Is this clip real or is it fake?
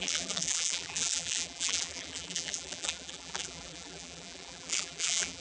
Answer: fake